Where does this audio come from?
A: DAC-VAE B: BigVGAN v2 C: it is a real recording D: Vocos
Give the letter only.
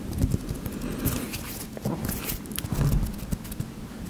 C